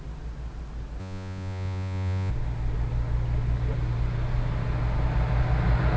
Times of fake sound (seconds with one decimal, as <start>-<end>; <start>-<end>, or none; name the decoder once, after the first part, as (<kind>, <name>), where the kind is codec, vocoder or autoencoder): 1.0-2.3 (vocoder, Vocos)